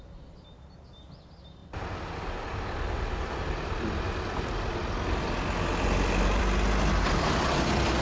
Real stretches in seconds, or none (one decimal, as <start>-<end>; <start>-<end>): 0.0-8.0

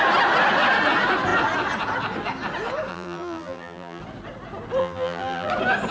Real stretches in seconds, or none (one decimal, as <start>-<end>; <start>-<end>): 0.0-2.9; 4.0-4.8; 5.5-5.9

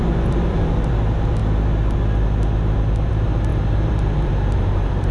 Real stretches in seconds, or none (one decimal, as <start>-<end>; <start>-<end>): 0.0-3.5

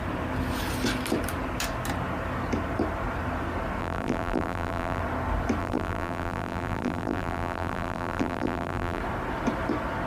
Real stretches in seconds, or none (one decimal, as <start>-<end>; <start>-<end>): 0.0-3.8; 5.0-5.6; 9.0-10.1

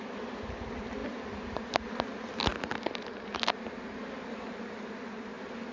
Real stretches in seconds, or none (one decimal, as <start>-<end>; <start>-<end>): 0.0-1.0; 1.7-5.7

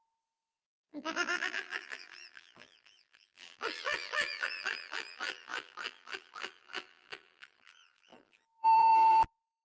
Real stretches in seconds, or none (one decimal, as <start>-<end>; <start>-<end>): none

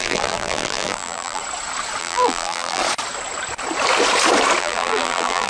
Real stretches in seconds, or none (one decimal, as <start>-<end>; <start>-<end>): 1.4-2.0; 2.8-4.6